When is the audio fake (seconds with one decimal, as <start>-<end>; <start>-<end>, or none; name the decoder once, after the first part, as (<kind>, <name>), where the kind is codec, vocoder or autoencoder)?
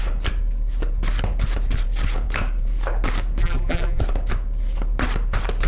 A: 3.4-4.0 (vocoder, BigVGAN v2)